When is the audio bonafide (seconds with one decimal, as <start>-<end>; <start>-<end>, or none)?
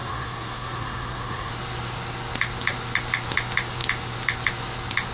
1.5-5.1